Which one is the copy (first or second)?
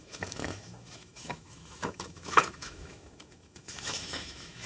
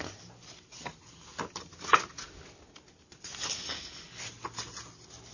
first